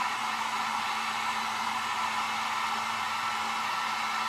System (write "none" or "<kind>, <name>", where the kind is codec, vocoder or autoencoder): none